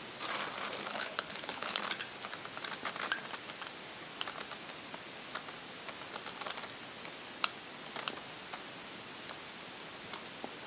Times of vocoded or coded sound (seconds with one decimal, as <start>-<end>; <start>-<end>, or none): 0.9-1.8